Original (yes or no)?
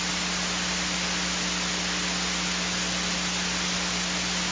yes